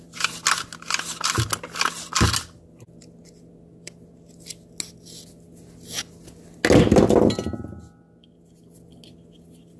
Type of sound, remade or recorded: recorded